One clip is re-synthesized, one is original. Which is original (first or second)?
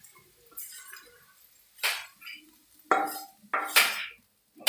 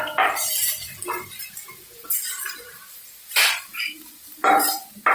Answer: first